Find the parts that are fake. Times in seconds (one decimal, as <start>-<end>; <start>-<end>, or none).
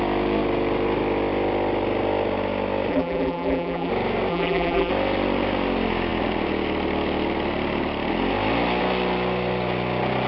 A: 2.9-3.9; 4.3-4.9